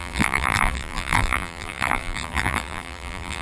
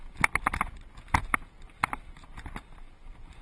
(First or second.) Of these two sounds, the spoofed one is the first